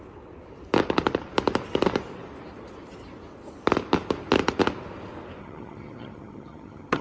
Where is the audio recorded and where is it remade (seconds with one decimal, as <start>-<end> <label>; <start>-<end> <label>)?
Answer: 0.0-5.4 recorded; 5.4-7.0 remade